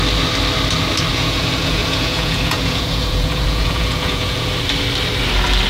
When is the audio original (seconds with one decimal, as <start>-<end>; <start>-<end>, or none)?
0.0-1.1; 4.5-5.7